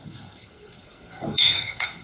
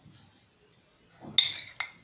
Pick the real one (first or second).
second